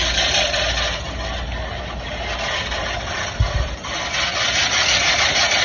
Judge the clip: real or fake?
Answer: real